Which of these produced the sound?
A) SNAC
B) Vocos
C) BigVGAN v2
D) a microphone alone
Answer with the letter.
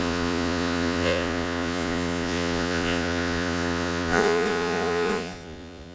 B